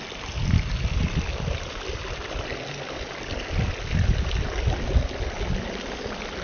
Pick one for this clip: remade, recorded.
recorded